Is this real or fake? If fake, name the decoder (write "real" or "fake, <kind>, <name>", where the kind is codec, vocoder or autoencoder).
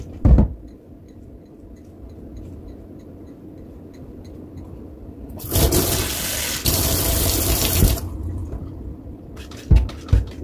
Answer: real